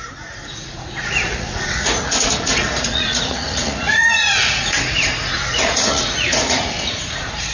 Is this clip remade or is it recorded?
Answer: remade